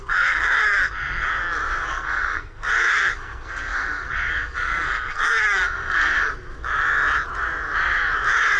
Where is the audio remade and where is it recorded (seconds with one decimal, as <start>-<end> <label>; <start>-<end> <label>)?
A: 0.0-1.3 remade; 1.3-1.9 recorded; 1.9-6.3 remade; 6.3-8.6 recorded